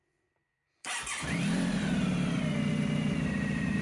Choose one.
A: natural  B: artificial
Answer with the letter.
B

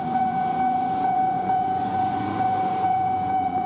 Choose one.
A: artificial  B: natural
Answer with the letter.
A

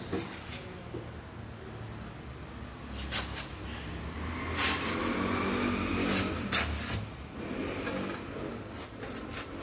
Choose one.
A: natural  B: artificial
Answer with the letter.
A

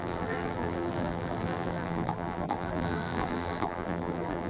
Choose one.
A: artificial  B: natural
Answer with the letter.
A